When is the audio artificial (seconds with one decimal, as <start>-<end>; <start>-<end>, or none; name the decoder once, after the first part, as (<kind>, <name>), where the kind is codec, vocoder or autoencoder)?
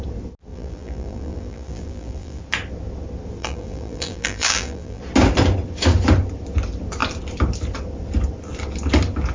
0.5-2.4 (vocoder, BigVGAN v2); 3.4-5.0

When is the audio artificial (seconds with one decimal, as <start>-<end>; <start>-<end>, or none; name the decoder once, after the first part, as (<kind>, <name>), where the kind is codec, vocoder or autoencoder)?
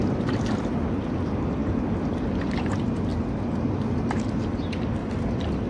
1.6-2.5 (vocoder, BigVGAN v2); 5.0-5.7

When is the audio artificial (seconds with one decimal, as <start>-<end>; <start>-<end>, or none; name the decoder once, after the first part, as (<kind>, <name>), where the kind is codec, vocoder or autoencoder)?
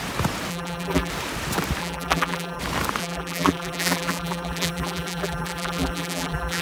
0.5-1.1 (vocoder, BigVGAN v2); 1.8-2.6; 3.0-6.6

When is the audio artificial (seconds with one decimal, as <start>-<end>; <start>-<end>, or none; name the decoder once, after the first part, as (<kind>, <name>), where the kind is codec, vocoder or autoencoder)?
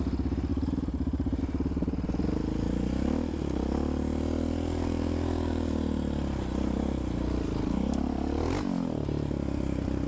0.5-1.4 (vocoder, BigVGAN v2)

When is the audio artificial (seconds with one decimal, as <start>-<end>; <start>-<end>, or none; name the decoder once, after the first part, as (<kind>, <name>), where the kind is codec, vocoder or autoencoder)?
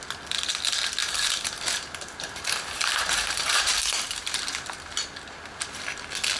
1.0-4.8 (vocoder, BigVGAN v2)